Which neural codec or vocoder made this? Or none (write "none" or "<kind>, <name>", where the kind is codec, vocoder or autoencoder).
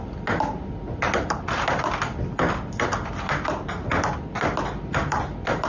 none